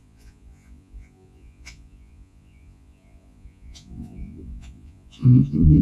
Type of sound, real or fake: fake